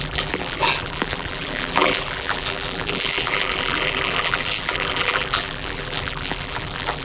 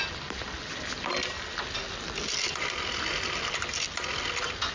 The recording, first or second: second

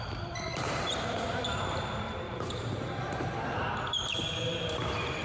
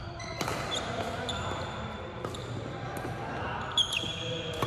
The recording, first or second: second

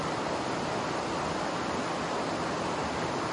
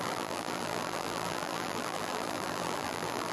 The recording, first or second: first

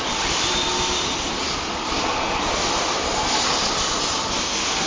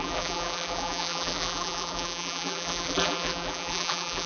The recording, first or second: first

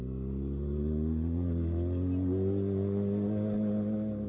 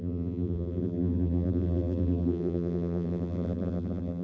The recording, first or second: first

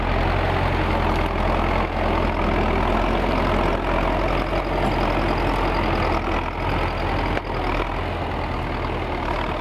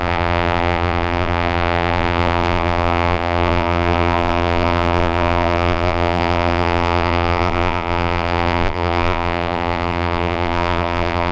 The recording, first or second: first